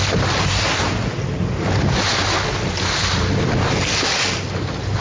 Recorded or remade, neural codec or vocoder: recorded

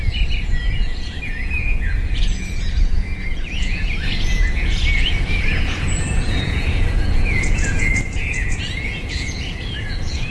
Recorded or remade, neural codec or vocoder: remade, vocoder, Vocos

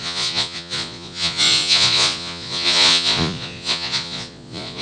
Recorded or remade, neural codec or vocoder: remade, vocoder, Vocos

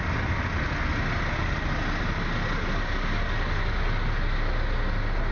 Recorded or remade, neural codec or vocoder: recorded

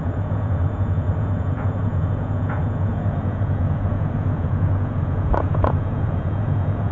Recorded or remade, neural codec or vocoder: remade, vocoder, Vocos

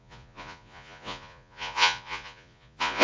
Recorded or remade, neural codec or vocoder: remade, vocoder, Vocos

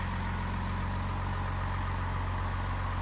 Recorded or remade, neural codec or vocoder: recorded